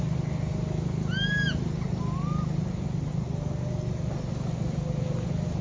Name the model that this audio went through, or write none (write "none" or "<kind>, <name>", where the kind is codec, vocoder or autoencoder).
none